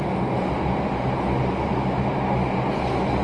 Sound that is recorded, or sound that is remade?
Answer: recorded